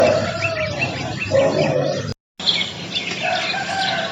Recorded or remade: recorded